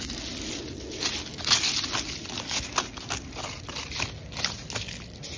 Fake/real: real